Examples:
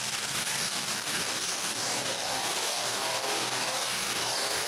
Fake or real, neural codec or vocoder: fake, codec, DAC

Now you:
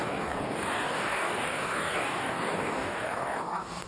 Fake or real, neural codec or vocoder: fake, codec, DAC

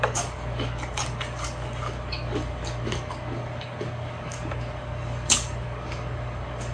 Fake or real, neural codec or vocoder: fake, codec, DAC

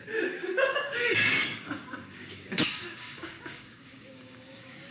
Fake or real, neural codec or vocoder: fake, codec, DAC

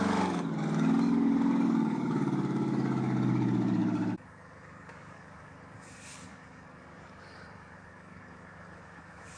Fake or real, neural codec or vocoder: fake, codec, DAC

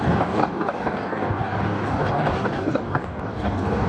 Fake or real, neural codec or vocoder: fake, codec, DAC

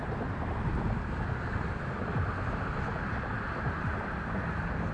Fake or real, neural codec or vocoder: real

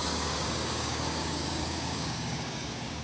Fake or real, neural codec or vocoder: fake, codec, DAC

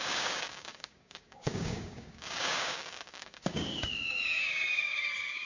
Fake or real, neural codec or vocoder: fake, codec, DAC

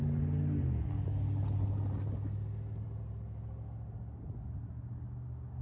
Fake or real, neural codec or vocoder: real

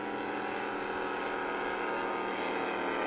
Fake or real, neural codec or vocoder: real